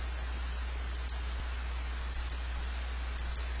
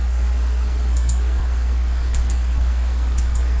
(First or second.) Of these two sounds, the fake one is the second